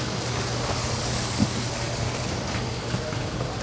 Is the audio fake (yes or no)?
yes